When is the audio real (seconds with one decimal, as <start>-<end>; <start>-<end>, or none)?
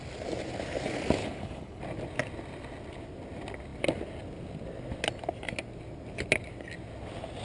0.0-1.2; 1.8-7.4